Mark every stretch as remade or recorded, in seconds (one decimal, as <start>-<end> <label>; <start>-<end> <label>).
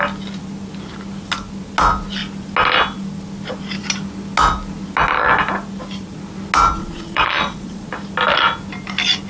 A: 0.0-6.8 recorded; 6.8-7.9 remade; 7.9-9.3 recorded